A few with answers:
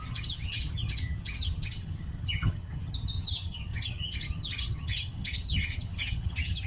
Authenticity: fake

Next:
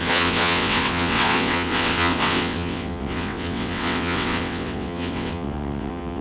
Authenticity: fake